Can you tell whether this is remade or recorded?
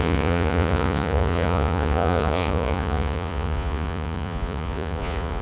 remade